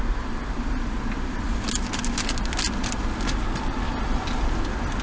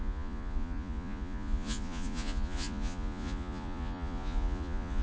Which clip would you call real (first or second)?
first